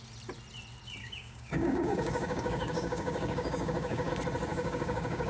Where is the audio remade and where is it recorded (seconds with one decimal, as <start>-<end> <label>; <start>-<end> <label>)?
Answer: 0.0-1.0 recorded; 1.0-4.1 remade; 4.1-4.5 recorded; 4.5-5.3 remade